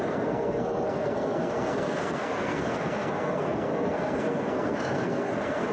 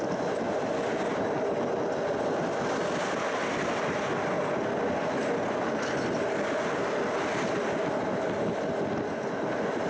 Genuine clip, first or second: second